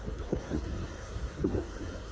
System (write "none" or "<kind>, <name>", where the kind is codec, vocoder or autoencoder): codec, SNAC